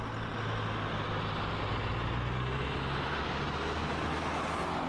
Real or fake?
real